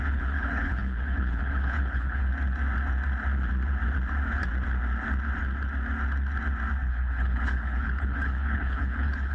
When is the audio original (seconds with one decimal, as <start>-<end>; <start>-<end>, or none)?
2.3-6.9